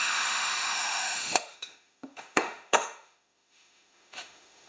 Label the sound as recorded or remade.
remade